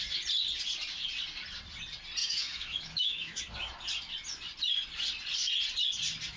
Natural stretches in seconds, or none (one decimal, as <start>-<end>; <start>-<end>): 0.0-2.2; 3.4-6.4